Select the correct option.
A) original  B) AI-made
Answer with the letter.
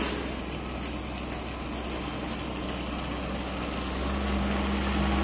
A